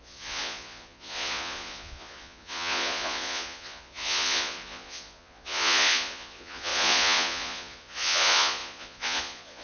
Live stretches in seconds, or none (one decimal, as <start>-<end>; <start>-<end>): none